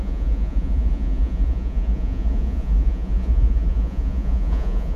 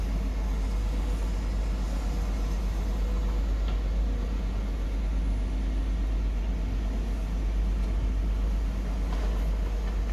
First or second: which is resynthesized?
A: first